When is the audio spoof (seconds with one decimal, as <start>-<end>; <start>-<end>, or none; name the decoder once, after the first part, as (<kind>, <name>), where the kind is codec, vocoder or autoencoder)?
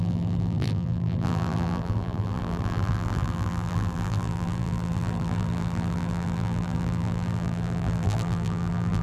0.0-9.0 (vocoder, BigVGAN v2)